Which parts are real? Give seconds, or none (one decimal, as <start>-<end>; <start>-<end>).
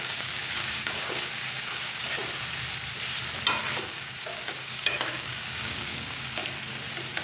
2.2-3.6; 6.4-7.2